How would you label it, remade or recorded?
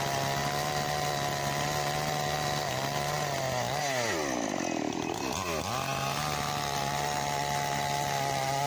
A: recorded